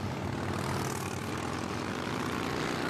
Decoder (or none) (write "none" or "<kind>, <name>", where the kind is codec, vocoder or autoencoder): none